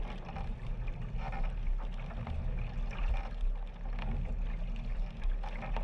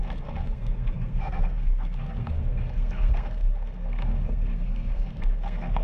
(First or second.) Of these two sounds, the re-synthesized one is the second